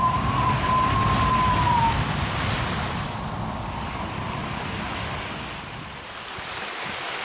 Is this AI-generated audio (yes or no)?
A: no